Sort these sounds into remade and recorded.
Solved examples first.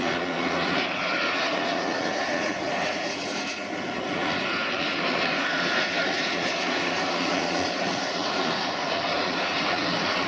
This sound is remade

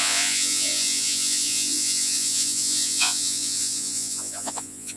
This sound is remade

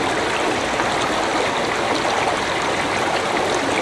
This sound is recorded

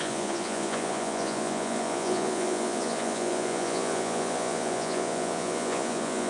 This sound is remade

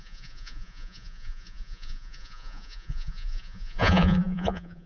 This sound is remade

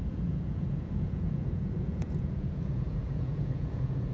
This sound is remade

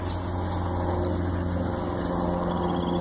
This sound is recorded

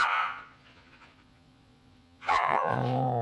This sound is remade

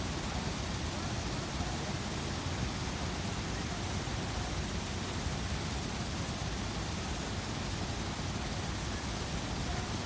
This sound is recorded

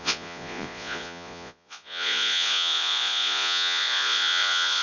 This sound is remade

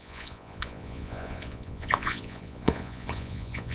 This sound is remade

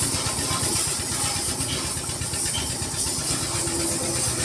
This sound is recorded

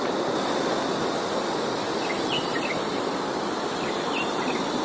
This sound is recorded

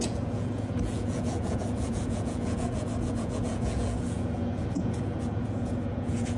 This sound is remade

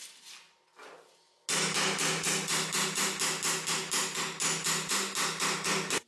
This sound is recorded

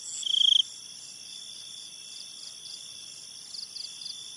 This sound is recorded